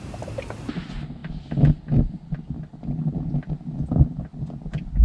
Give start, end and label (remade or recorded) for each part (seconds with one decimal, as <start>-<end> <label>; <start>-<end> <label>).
0.0-5.0 recorded